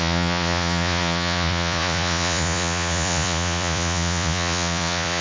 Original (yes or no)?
no